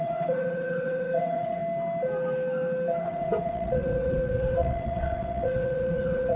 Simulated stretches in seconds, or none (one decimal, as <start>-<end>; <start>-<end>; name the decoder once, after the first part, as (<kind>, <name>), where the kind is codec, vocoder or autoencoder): 0.0-1.6 (vocoder, WaveNeXt); 3.0-6.4

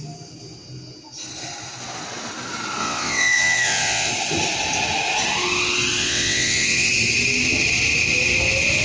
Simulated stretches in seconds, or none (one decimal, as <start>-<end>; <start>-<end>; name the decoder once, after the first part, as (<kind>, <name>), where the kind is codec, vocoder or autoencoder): 2.8-4.1 (vocoder, WaveNeXt); 6.0-6.9

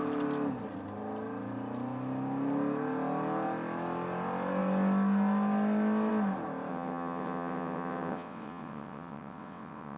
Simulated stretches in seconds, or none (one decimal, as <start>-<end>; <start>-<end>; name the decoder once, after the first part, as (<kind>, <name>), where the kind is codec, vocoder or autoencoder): 6.7-10.0 (vocoder, WaveNeXt)

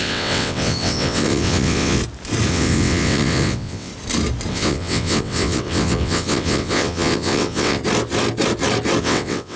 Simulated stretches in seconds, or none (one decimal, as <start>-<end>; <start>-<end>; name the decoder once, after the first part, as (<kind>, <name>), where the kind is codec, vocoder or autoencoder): 0.0-2.0 (vocoder, WaveNeXt); 2.5-3.9; 4.5-7.8; 9.0-9.6